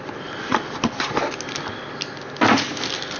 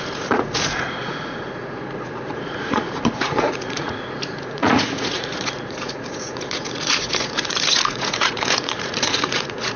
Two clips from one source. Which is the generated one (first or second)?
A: second